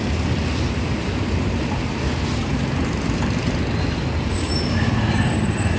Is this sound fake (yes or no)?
no